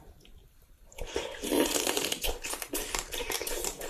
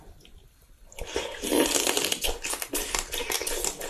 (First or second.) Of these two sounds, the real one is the second